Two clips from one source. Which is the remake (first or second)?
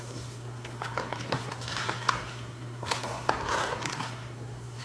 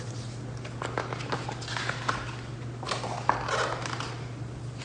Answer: first